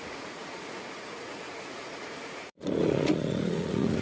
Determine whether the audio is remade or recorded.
remade